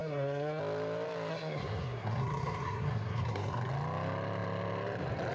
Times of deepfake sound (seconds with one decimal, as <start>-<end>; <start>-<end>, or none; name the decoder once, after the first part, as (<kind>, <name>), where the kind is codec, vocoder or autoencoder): 0.0-0.6 (codec, SNAC); 1.3-3.7